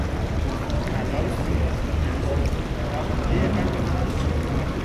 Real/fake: fake